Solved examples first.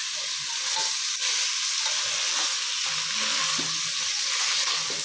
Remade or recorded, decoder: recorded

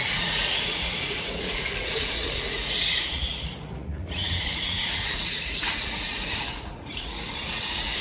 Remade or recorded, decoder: remade, vocoder, Vocos